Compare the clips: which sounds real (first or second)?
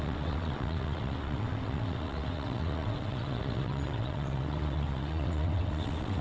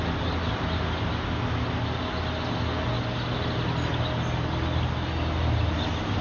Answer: second